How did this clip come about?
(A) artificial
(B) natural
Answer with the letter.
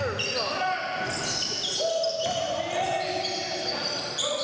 B